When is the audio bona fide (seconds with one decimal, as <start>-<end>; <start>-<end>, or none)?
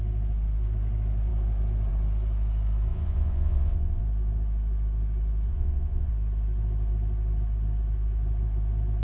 0.0-2.9; 4.0-5.5; 6.1-9.0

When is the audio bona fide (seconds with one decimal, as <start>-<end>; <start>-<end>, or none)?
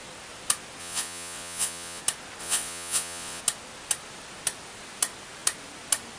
0.0-0.8; 2.0-2.4; 3.4-6.2